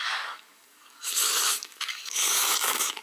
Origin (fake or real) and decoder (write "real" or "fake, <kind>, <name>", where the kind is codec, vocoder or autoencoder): fake, codec, DAC